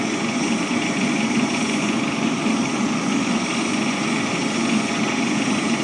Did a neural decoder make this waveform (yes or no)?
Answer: yes